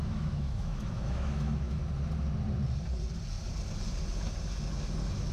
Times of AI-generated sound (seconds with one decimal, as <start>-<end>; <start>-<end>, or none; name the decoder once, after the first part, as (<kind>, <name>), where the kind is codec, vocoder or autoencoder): 0.0-1.8 (autoencoder, DAC-VAE)